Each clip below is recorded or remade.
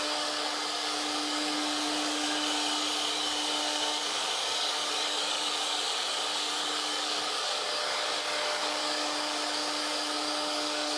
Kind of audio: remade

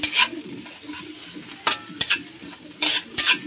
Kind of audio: recorded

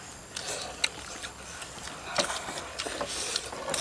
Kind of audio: recorded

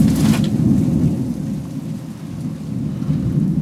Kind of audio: recorded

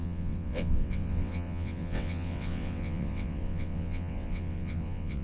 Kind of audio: remade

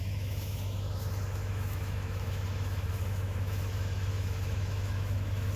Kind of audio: remade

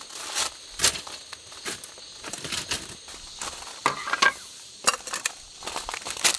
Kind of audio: recorded